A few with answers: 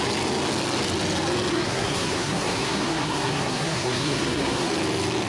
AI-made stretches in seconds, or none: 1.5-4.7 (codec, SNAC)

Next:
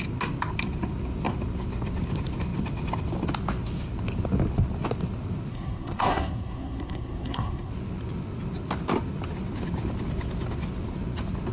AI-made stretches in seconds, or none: 5.5-7.7 (codec, SNAC)

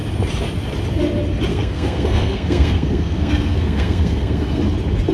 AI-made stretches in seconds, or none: 1.5-4.6 (codec, SNAC)

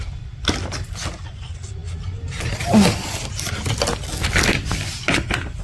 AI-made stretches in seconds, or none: none